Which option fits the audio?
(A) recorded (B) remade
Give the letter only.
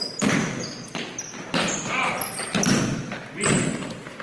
A